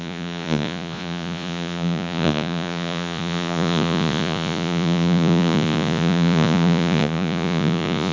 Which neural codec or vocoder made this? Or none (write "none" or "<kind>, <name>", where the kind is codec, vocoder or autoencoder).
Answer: vocoder, Vocos